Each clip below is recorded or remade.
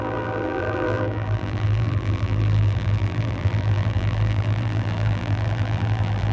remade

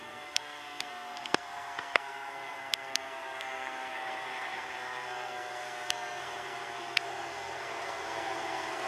remade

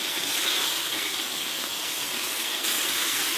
remade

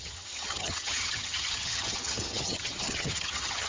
remade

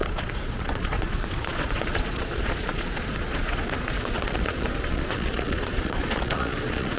remade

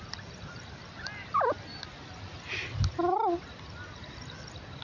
recorded